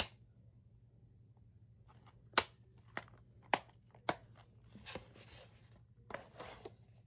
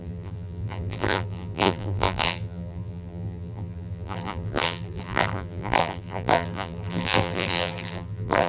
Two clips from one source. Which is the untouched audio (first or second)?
first